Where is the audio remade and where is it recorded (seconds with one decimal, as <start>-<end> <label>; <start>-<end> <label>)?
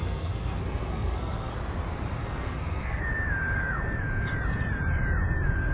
0.0-1.5 remade; 1.5-2.2 recorded; 2.2-3.0 remade; 3.0-5.7 recorded